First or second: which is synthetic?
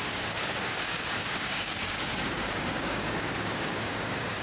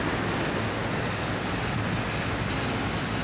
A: first